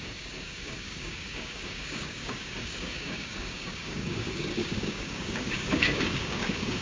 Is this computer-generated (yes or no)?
yes